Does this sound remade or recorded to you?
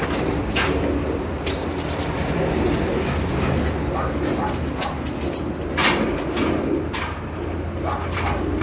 recorded